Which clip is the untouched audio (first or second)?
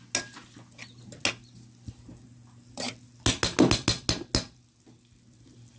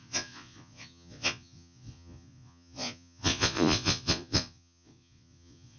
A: first